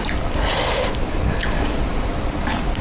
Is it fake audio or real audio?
real